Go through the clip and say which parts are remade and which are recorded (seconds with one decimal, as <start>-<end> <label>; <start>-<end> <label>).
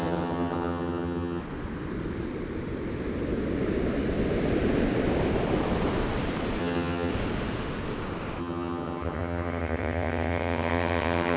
0.0-1.4 remade; 1.4-6.6 recorded; 6.6-7.1 remade; 7.1-8.4 recorded; 8.4-11.4 remade